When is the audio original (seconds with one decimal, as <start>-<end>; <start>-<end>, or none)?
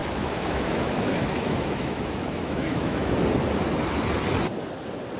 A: 3.1-5.2